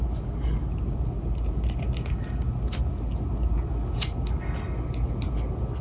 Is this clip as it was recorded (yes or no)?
yes